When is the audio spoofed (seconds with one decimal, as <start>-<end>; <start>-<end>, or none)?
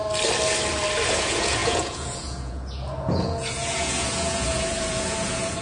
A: 1.1-5.6